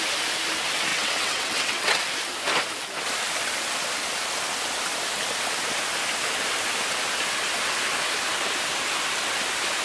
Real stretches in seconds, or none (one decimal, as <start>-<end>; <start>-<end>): 0.0-0.9; 2.0-9.8